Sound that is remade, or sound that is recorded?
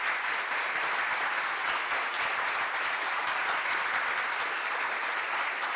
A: recorded